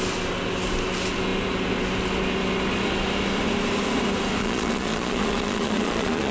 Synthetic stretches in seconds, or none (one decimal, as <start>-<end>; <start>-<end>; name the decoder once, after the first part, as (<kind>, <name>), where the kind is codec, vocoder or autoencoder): 4.4-6.3 (vocoder, Vocos)